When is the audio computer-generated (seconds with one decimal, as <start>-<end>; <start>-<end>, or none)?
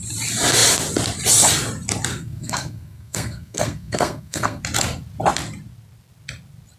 2.1-4.6